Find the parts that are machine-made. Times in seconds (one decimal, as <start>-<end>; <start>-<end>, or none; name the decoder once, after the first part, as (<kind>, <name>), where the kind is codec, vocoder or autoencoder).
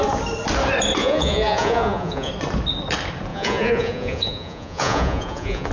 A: 1.0-2.3 (vocoder, Vocos); 3.3-5.7